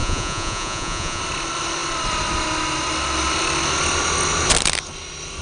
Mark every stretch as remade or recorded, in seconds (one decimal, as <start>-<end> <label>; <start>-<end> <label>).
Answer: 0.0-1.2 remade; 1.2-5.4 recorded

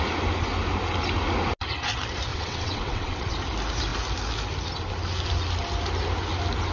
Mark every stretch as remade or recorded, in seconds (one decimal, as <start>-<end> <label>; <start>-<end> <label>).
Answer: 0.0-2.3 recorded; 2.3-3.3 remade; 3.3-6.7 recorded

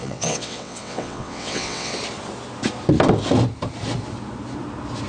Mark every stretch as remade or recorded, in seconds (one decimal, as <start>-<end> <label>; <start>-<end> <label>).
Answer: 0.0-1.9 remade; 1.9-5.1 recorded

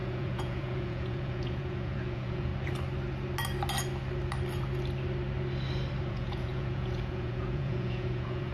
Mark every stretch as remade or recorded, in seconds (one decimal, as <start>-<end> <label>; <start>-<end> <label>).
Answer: 0.0-2.5 remade; 2.5-6.1 recorded; 6.1-8.5 remade

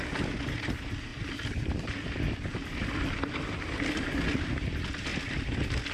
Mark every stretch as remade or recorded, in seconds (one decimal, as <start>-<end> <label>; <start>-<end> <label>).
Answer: 0.0-1.1 recorded; 1.1-2.9 remade; 2.9-5.1 recorded; 5.1-5.9 remade

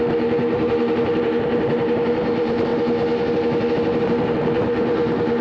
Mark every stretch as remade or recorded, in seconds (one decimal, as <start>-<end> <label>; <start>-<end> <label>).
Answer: 0.0-2.7 remade; 2.7-4.0 recorded; 4.0-5.4 remade

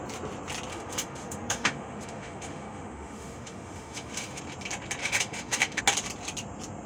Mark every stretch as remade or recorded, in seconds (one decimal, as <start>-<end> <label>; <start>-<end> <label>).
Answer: 0.0-0.7 recorded; 0.7-4.4 remade; 4.4-5.0 recorded; 5.0-5.8 remade; 5.8-6.9 recorded

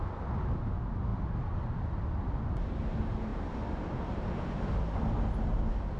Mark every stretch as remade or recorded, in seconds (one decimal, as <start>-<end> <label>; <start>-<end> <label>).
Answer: 0.0-6.0 recorded